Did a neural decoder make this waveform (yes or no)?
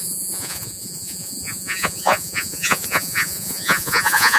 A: yes